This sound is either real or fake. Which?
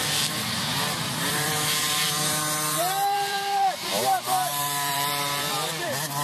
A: fake